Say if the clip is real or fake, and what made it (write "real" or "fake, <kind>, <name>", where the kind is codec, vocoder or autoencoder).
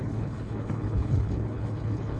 fake, codec, HILCodec